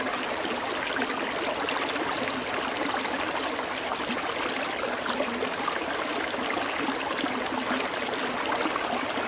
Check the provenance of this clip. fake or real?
real